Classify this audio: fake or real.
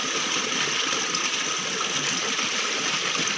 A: real